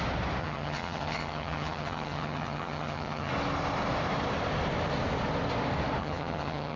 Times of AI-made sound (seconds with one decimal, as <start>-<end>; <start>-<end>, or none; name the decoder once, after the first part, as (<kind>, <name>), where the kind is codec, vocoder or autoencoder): 0.4-3.3 (vocoder, HiFi-GAN); 6.0-6.8